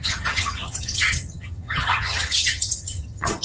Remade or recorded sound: remade